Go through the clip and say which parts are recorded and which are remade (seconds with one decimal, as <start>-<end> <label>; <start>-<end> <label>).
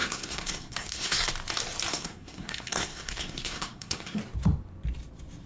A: 0.0-1.3 remade; 1.3-1.9 recorded; 1.9-4.2 remade; 4.2-5.5 recorded